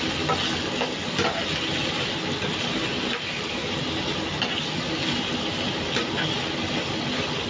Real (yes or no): yes